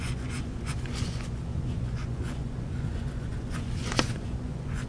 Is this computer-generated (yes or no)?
yes